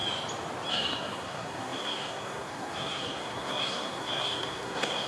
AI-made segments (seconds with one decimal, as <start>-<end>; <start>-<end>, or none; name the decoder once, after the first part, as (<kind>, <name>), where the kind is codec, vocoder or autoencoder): 0.7-5.1 (codec, SNAC)